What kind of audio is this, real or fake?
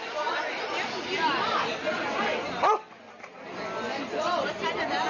real